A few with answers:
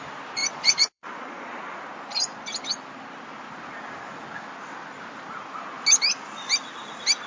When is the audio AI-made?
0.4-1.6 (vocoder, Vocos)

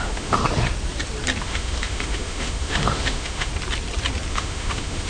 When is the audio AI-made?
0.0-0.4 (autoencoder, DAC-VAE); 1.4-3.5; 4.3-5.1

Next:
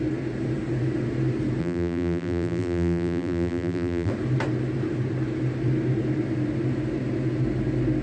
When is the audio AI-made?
1.6-4.1 (vocoder, BigVGAN v2)